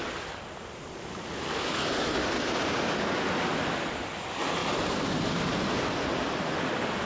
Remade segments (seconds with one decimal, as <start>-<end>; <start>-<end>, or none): 4.6-5.8